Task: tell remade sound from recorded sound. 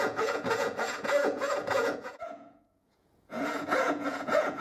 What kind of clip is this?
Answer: remade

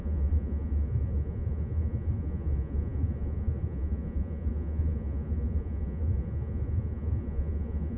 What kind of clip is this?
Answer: remade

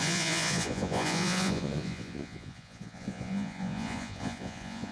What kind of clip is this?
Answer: remade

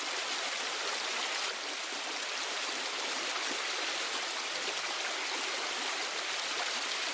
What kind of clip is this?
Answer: recorded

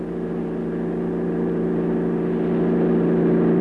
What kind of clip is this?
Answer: recorded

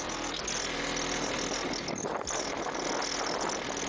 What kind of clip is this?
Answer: recorded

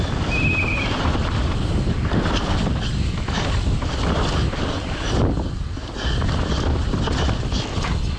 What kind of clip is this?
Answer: recorded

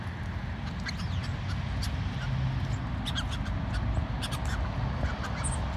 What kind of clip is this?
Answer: recorded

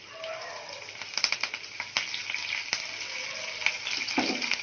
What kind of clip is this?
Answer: recorded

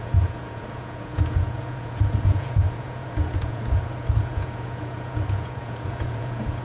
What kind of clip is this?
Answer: remade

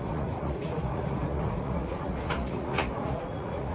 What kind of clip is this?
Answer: remade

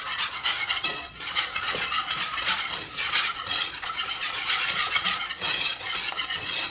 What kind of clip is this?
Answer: remade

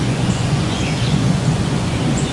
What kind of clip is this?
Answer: remade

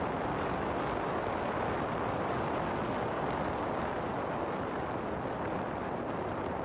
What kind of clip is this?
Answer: recorded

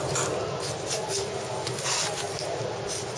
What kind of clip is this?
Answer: recorded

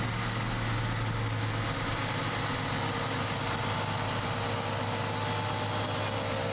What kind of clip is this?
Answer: recorded